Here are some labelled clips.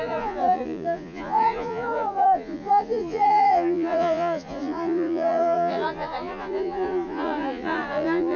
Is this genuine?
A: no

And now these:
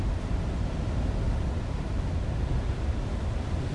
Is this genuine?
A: yes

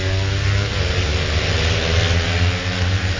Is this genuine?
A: yes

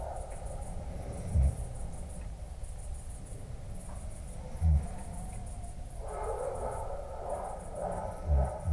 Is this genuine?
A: yes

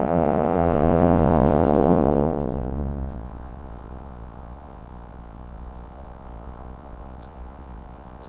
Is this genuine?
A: no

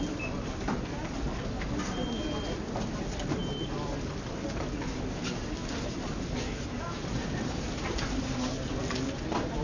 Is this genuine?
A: yes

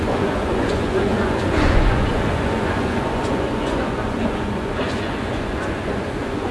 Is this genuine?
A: no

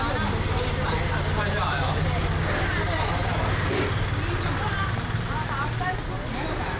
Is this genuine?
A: yes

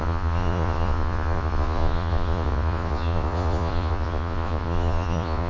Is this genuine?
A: no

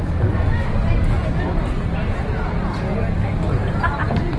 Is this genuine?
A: yes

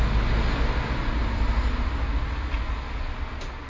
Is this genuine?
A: yes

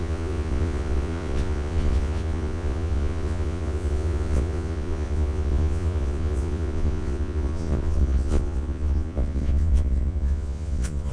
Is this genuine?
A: no